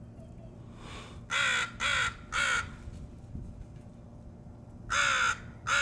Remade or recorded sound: recorded